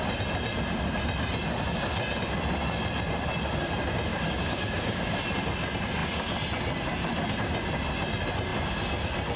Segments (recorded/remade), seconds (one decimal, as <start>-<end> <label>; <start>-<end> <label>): 0.0-4.1 recorded; 4.1-5.0 remade; 5.0-9.4 recorded